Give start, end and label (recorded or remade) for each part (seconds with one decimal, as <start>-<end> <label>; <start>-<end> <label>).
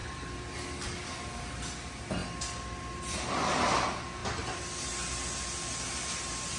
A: 0.0-6.6 recorded